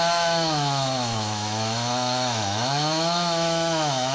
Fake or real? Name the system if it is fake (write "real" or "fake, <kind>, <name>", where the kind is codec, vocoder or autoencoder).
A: fake, autoencoder, DAC-VAE